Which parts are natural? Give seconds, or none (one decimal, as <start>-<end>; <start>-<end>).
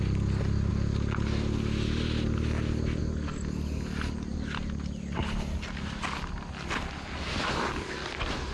0.0-8.5